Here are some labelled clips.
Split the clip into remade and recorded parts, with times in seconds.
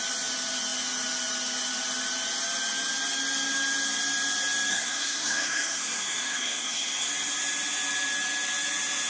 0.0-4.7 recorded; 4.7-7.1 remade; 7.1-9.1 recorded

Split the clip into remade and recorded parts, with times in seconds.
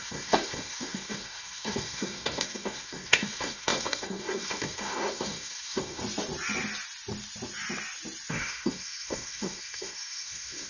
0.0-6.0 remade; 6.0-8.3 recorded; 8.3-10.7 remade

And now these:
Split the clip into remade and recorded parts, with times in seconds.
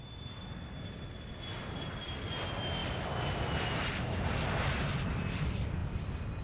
0.0-6.4 recorded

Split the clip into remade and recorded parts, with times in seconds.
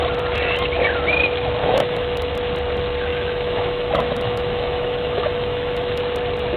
0.0-1.6 recorded; 1.6-2.3 remade; 2.3-3.1 recorded; 3.1-6.0 remade; 6.0-6.6 recorded